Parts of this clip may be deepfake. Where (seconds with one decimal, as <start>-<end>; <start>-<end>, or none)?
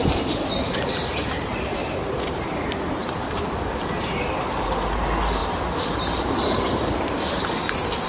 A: 1.1-4.7; 5.4-7.4